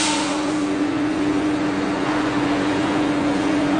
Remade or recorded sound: remade